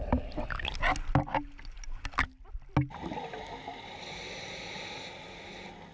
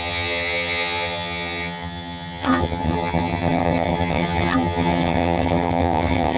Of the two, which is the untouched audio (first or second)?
first